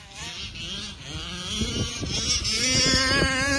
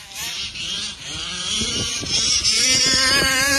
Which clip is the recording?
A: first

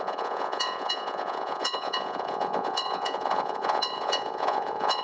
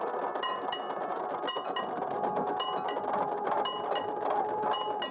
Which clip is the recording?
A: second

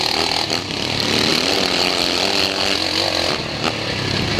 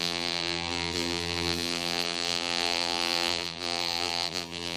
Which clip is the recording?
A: first